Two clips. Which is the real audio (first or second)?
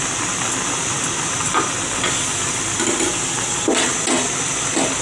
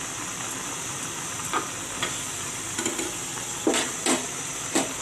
first